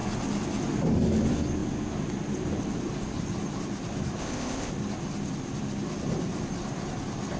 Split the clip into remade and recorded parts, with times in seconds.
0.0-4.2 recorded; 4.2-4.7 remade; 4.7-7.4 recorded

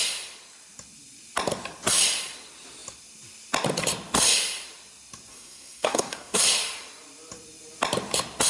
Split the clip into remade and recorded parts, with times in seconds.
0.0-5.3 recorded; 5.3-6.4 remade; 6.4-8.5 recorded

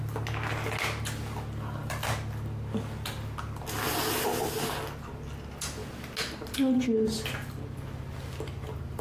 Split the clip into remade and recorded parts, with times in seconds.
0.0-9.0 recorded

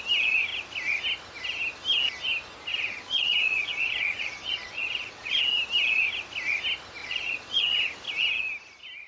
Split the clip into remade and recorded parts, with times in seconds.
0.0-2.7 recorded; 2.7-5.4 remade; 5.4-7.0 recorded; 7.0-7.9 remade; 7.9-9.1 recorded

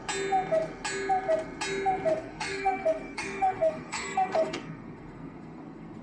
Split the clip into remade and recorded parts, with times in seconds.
0.0-2.1 recorded; 2.1-6.0 remade

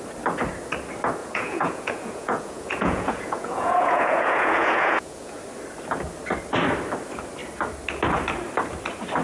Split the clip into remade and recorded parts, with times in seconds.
0.0-1.2 recorded; 1.2-5.4 remade; 5.4-9.2 recorded

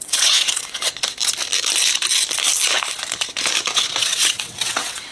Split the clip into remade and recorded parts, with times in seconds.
0.0-0.9 remade; 0.9-4.0 recorded; 4.0-5.1 remade